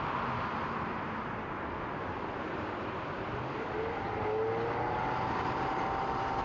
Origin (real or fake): real